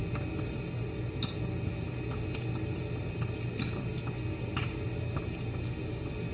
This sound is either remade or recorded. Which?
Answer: recorded